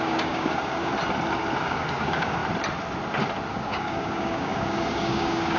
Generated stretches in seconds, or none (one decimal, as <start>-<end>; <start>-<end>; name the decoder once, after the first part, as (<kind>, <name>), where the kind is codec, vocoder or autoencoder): 0.0-0.9 (codec, DAC); 1.6-2.4; 3.5-5.6